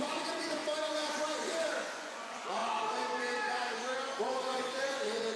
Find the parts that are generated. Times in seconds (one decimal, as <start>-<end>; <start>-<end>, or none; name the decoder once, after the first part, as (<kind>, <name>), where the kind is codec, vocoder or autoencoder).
0.0-0.6 (vocoder, Vocos); 1.7-2.6; 4.2-5.4